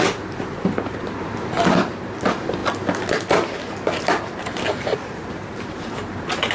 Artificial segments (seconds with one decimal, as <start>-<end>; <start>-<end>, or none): 0.0-2.6; 3.7-6.5